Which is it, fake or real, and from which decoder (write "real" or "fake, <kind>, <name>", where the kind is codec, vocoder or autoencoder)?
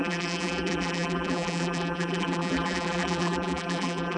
fake, vocoder, BigVGAN v2